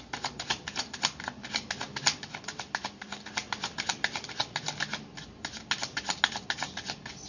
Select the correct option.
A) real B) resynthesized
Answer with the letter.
A